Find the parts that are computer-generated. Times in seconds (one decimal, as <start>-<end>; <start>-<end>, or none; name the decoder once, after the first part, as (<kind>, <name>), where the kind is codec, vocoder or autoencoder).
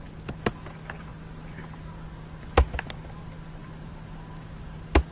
none